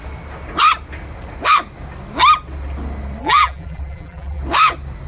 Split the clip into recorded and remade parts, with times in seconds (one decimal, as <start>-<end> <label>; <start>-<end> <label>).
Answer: 0.0-3.2 recorded; 3.2-4.4 remade; 4.4-5.1 recorded